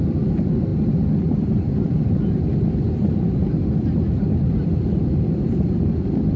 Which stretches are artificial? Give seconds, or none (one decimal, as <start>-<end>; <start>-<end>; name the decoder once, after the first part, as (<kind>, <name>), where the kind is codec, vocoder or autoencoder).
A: none